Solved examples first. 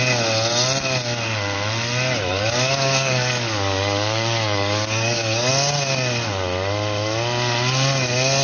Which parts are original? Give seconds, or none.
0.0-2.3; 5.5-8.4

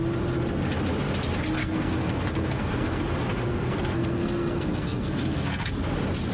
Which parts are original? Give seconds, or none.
0.0-1.6; 3.0-3.5; 5.7-6.3

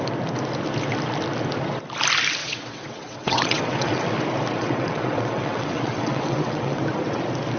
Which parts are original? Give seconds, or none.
0.0-2.4; 4.1-4.6; 6.8-7.6

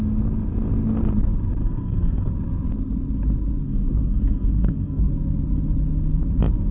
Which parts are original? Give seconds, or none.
0.0-1.6; 2.3-3.6; 5.1-6.7

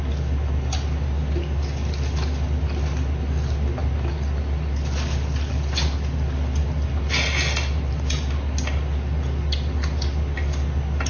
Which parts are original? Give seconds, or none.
0.0-11.1

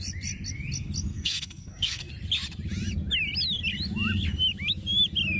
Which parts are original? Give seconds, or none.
0.0-1.1; 2.1-5.4